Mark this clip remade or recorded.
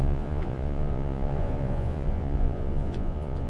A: remade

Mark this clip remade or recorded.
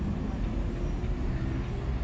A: recorded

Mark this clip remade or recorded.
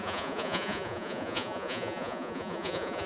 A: remade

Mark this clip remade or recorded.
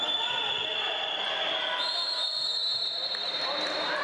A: recorded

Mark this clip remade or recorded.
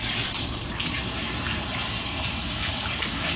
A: recorded